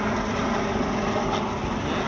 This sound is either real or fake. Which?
real